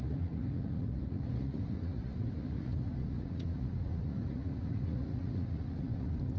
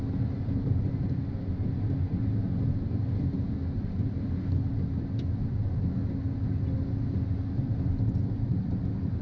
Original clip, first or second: second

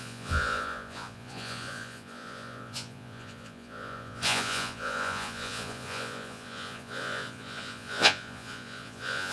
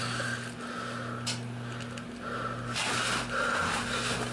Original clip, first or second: second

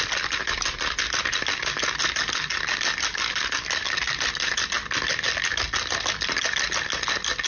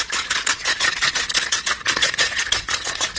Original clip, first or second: first